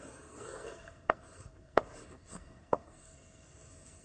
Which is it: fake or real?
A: fake